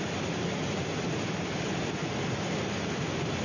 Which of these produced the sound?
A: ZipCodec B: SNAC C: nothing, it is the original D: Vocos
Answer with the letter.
C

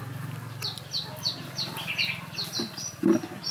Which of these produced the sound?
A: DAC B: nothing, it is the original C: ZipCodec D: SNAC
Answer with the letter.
B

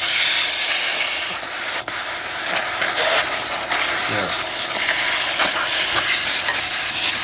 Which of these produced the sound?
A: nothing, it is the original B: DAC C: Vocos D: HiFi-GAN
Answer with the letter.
A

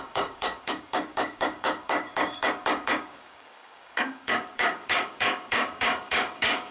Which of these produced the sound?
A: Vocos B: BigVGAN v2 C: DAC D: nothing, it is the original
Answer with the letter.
C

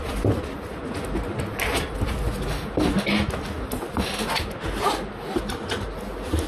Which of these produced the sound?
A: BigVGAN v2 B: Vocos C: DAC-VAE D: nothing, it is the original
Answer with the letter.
D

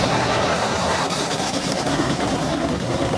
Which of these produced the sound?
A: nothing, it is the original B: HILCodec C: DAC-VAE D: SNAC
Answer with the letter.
D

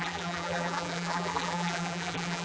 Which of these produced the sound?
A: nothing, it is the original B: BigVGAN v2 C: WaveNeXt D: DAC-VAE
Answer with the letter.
B